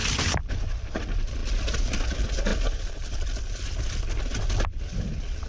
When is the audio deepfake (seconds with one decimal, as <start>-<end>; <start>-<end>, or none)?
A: none